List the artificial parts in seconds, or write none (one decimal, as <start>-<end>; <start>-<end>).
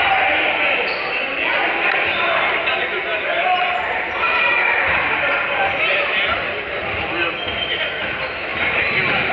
3.1-7.2; 8.5-9.3